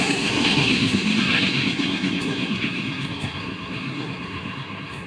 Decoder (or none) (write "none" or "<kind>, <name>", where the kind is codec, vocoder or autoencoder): codec, SNAC